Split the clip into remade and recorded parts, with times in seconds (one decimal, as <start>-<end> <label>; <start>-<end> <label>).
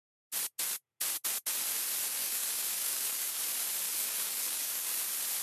0.0-2.2 recorded; 2.2-3.4 remade; 3.4-3.9 recorded; 3.9-5.0 remade; 5.0-5.4 recorded